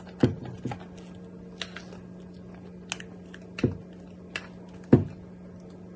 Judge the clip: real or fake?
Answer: real